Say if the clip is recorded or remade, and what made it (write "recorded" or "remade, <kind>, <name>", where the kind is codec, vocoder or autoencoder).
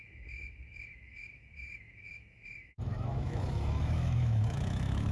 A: remade, autoencoder, DAC-VAE